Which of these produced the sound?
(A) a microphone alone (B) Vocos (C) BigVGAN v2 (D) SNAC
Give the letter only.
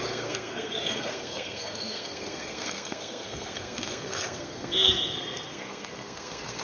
D